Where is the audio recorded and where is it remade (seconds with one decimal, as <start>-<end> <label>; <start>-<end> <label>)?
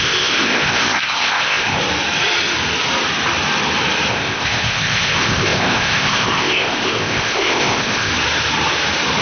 0.0-1.8 remade; 1.8-4.1 recorded; 4.1-8.1 remade; 8.1-9.2 recorded